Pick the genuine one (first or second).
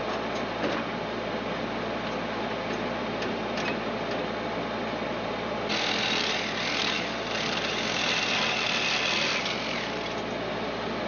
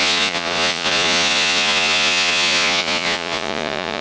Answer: first